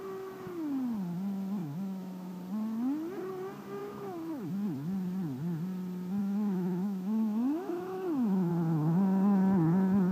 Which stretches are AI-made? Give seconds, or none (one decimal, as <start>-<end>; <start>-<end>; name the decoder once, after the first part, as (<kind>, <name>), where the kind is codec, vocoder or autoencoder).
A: 1.6-2.3 (autoencoder, DAC-VAE); 3.8-4.5; 6.2-8.5